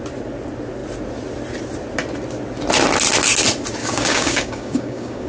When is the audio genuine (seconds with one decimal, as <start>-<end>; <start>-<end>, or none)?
0.0-3.8